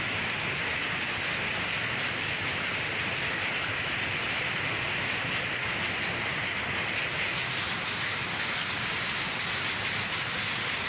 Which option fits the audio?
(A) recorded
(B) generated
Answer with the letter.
A